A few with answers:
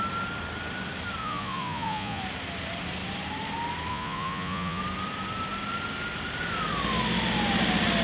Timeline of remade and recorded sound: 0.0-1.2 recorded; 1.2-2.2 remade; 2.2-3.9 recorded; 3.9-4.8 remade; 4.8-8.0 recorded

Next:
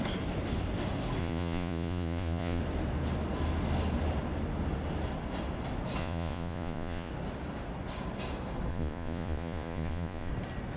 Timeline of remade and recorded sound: 0.0-1.2 recorded; 1.2-2.6 remade; 2.6-6.0 recorded; 6.0-7.1 remade; 7.1-8.7 recorded; 8.7-10.3 remade; 10.3-10.8 recorded

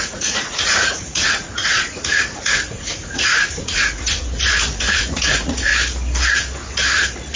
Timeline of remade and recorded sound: 0.0-5.7 remade; 5.7-7.4 recorded

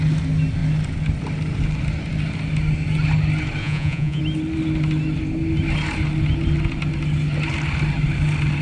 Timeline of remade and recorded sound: 0.0-3.6 recorded; 3.6-4.2 remade; 4.2-8.6 recorded